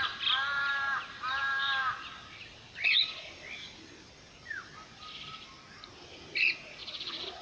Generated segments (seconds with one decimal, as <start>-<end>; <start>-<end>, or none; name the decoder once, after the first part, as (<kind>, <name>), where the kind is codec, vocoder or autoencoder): 6.8-7.4 (vocoder, BigVGAN v2)